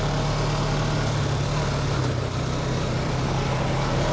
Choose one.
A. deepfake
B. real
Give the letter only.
B